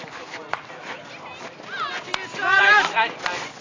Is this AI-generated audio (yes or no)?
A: no